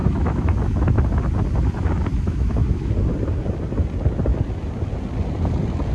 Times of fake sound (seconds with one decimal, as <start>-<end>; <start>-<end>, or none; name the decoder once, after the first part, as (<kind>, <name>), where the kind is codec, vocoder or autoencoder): 0.0-0.5 (autoencoder, DAC-VAE); 2.1-2.9